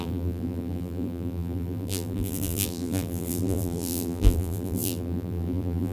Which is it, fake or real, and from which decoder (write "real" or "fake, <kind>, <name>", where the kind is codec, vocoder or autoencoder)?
fake, vocoder, BigVGAN v2